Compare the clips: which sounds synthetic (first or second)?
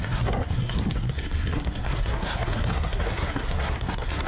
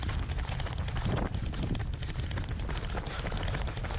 first